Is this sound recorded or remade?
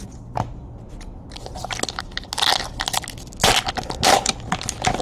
recorded